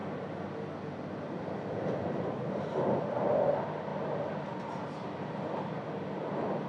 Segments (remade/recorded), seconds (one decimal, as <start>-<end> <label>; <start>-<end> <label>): 0.0-6.7 recorded